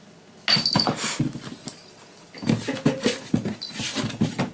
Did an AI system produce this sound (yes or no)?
no